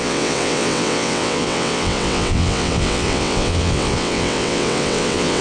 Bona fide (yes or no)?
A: no